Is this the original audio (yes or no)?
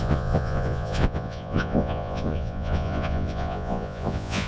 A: no